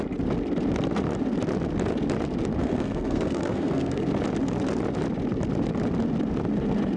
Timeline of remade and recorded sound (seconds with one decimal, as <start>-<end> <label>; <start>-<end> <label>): 0.0-2.6 recorded; 2.6-4.1 remade; 4.1-7.0 recorded